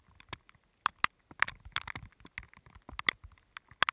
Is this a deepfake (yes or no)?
no